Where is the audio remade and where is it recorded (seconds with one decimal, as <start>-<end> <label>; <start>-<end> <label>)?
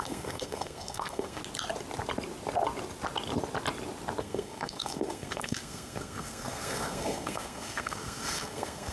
0.0-1.4 remade; 1.4-4.2 recorded; 4.2-8.9 remade